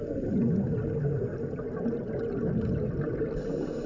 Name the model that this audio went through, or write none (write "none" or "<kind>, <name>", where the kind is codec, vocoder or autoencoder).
none